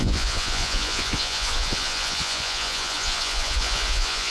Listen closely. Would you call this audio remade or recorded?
remade